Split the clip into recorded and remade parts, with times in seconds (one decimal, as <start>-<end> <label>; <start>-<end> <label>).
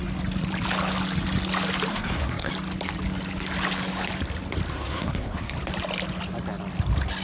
0.0-1.9 recorded; 1.9-2.5 remade; 2.5-4.7 recorded; 4.7-5.5 remade; 5.5-7.2 recorded